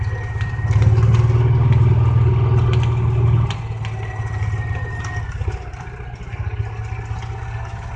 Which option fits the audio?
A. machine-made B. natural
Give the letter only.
B